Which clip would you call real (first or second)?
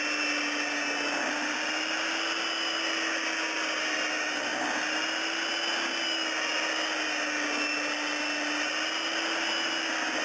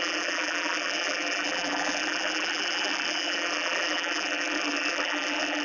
first